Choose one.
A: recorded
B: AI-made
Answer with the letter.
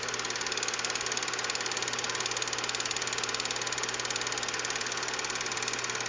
A